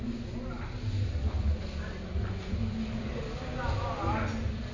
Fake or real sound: real